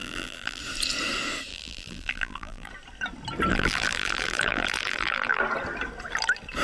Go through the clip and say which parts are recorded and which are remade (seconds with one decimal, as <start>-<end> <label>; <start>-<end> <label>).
0.0-0.6 remade; 0.6-1.5 recorded; 1.5-2.7 remade; 2.7-3.5 recorded; 3.5-5.4 remade; 5.4-6.6 recorded